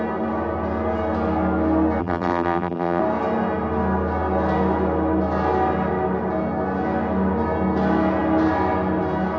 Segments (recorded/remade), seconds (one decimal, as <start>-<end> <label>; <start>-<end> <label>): 0.0-2.0 recorded; 2.0-3.0 remade; 3.0-9.4 recorded